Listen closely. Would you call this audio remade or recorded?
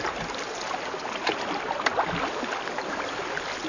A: recorded